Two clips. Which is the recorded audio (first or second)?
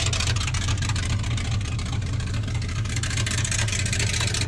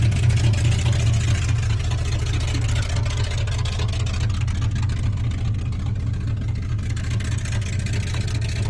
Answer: second